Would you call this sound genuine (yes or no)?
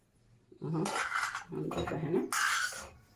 yes